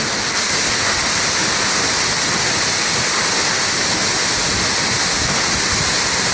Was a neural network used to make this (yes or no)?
no